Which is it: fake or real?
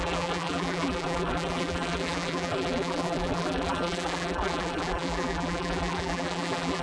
fake